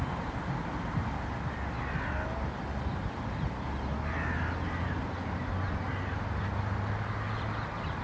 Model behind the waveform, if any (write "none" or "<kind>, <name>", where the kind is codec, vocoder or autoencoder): none